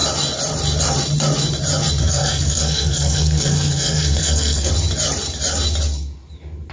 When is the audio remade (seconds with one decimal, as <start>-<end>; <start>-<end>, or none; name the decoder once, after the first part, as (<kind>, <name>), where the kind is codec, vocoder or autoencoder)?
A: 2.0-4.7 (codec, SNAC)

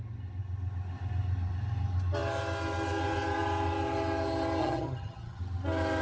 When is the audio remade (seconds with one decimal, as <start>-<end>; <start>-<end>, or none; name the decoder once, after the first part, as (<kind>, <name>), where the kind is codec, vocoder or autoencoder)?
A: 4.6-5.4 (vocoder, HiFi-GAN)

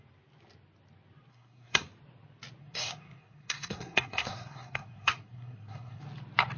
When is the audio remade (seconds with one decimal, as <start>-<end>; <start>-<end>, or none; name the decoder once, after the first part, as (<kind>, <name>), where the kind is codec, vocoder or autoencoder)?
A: 1.3-1.8 (codec, SNAC); 2.6-6.0